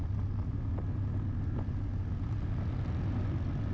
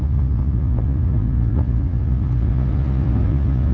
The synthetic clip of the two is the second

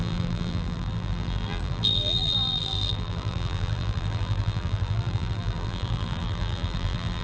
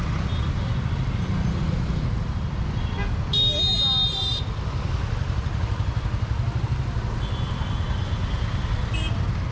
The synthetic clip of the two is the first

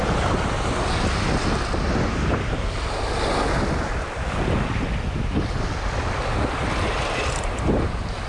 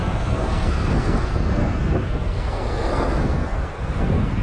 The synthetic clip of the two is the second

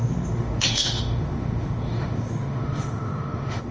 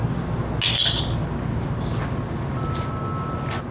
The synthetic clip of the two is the first